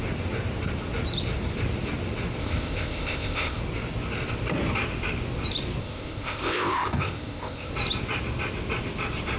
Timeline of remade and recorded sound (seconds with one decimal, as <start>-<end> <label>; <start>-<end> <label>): 0.0-2.4 recorded; 2.4-3.6 remade; 3.6-5.8 recorded; 5.8-7.7 remade; 7.7-9.4 recorded